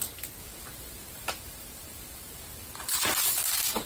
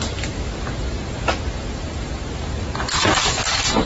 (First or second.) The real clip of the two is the second